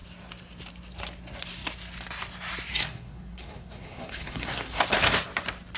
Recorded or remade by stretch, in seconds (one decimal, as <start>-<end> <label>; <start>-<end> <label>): 0.0-2.7 recorded; 2.7-4.8 remade; 4.8-5.8 recorded